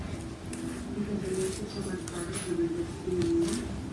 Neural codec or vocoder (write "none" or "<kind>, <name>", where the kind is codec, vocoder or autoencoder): none